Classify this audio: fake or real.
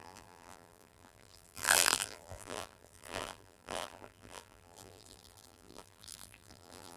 fake